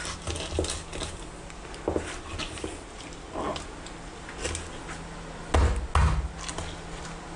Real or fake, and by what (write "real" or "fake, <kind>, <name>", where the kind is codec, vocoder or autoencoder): real